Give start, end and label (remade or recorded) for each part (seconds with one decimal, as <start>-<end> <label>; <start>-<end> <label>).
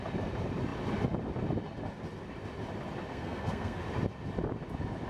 0.0-3.1 recorded; 3.1-3.8 remade; 3.8-5.1 recorded